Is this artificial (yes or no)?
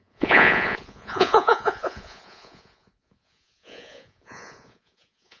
yes